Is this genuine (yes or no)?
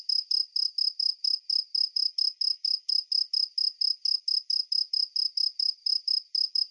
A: yes